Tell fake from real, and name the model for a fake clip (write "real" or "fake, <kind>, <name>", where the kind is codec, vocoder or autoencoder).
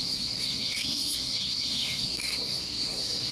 fake, codec, SNAC